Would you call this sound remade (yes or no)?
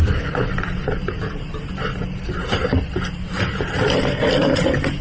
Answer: no